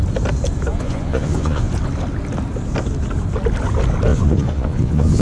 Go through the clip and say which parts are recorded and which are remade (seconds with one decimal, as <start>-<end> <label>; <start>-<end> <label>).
0.0-0.7 recorded; 0.7-1.7 remade; 1.7-4.1 recorded; 4.1-5.2 remade